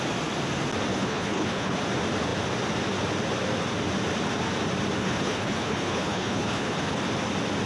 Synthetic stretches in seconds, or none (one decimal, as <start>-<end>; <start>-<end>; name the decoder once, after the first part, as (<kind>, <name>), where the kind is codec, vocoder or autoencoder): 0.9-1.8 (codec, HILCodec); 5.0-7.0

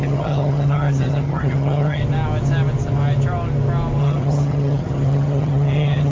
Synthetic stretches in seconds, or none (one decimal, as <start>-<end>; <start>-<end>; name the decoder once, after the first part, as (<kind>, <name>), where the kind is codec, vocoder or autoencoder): 0.0-2.0 (vocoder, HiFi-GAN); 4.0-6.1